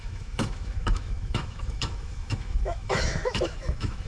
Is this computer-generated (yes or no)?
yes